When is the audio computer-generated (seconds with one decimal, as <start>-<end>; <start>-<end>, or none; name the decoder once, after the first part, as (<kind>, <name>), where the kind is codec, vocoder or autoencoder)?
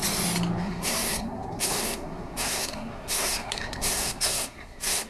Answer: 0.6-5.1 (codec, SNAC)